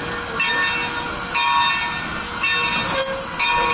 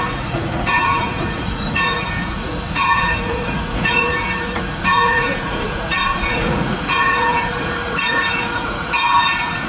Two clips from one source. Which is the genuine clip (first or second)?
first